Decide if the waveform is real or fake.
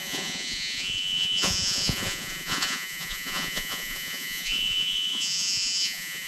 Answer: fake